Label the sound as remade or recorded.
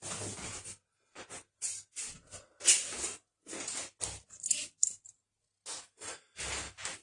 recorded